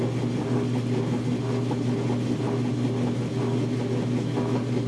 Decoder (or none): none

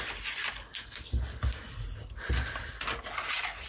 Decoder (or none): none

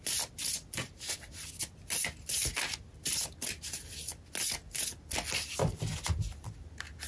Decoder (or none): none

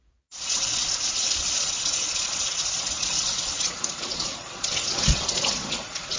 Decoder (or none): vocoder, Vocos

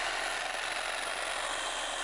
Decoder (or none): none